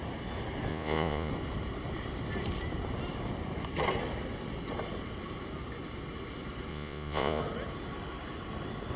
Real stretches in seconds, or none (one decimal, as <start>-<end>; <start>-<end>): 0.0-0.7; 1.3-6.7; 7.4-9.0